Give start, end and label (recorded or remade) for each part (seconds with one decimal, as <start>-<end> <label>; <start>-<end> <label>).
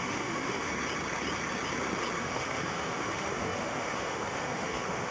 0.0-0.7 remade; 0.7-2.2 recorded; 2.2-5.1 remade